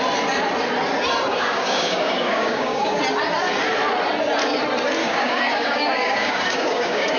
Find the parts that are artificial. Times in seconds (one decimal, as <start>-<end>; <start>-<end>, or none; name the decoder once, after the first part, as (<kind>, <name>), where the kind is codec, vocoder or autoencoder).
1.3-3.0 (codec, DAC); 5.0-7.2